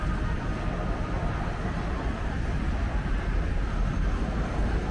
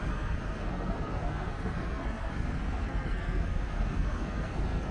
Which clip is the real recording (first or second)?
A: first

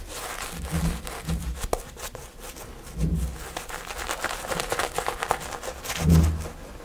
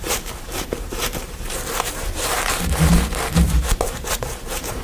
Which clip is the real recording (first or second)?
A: first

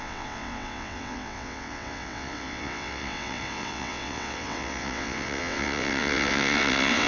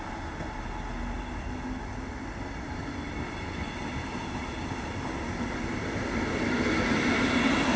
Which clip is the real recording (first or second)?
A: second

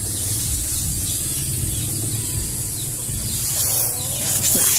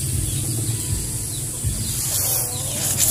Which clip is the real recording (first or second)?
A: second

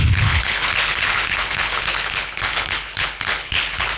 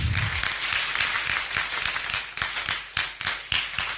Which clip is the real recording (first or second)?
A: second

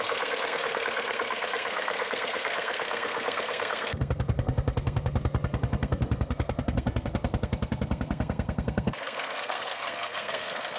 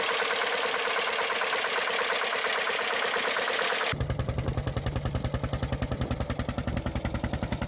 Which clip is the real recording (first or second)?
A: second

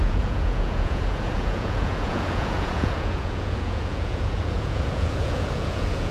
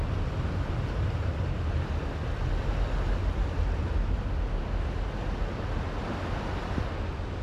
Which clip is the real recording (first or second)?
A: second